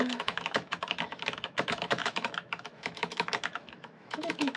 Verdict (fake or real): fake